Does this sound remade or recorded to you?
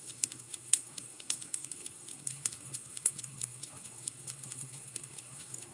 remade